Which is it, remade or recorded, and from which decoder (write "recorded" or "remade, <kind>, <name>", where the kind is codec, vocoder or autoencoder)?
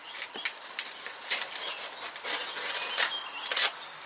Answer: recorded